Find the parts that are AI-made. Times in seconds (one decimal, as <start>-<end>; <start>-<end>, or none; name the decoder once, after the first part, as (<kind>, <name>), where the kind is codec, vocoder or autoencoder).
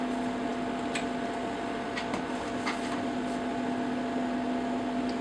none